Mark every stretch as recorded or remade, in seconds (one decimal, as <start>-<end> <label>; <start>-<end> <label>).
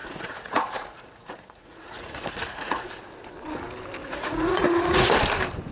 0.0-2.9 remade; 2.9-4.0 recorded; 4.0-5.1 remade; 5.1-5.7 recorded